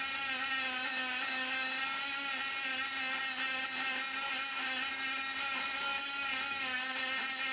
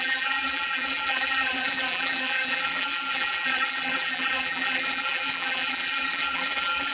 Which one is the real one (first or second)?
first